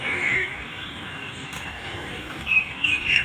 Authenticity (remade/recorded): remade